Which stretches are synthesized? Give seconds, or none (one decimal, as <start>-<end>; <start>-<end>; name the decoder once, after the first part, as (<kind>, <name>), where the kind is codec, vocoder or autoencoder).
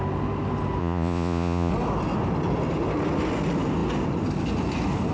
0.8-1.7 (vocoder, Vocos)